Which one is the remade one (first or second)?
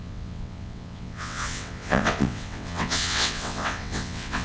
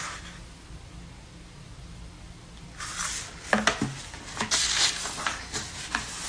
first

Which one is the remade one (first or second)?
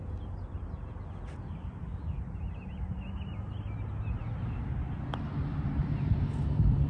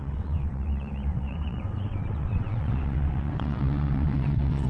second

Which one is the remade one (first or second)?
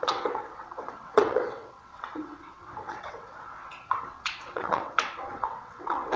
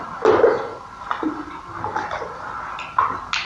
first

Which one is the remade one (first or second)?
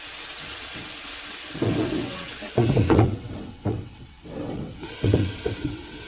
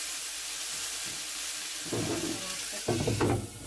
first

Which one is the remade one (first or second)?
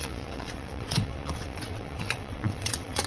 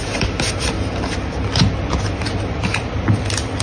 first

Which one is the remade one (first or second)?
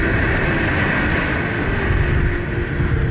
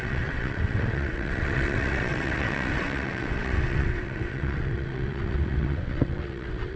second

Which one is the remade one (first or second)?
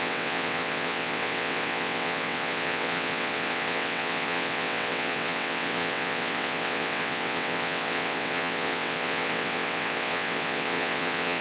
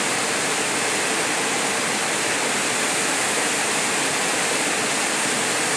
first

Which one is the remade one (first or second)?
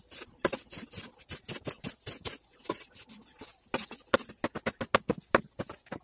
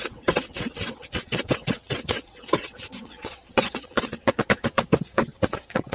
second